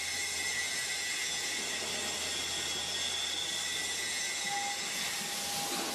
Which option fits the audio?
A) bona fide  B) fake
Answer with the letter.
A